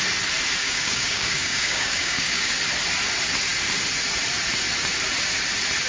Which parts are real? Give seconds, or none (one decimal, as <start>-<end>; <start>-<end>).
0.0-0.6; 2.5-5.9